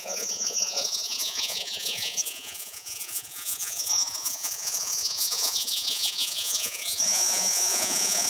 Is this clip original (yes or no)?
no